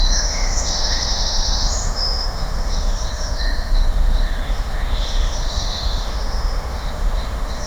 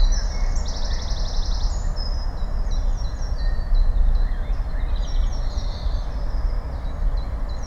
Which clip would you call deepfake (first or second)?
first